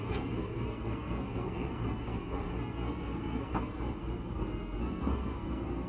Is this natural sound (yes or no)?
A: no